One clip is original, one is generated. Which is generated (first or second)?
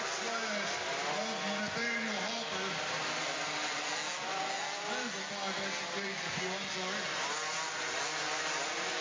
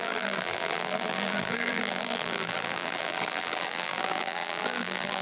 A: second